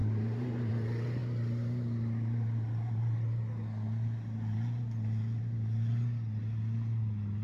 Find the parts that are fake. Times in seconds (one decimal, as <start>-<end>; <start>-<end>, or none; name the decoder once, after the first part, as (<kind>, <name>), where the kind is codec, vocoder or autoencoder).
none